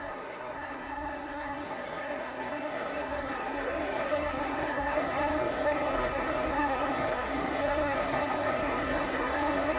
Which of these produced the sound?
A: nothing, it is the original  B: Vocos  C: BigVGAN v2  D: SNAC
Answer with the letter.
D